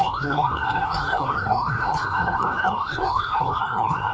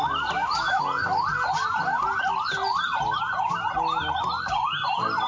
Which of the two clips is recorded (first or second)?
second